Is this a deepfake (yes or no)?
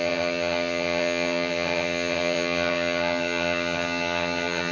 yes